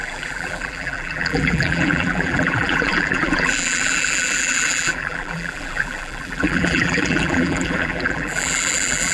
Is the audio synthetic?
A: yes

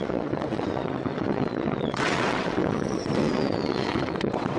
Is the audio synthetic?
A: yes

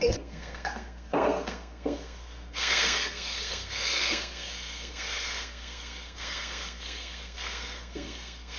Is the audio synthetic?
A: yes